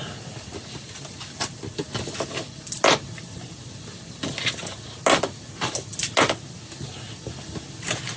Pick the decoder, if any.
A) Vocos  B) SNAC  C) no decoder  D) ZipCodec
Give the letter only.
C